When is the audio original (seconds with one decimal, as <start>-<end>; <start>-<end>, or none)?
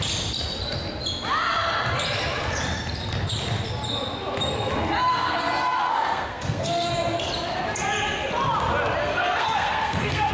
0.0-5.1; 6.9-9.0